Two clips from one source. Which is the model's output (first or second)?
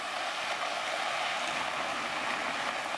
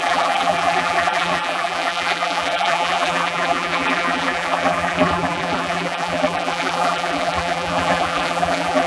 second